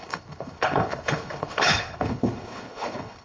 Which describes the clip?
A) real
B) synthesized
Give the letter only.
B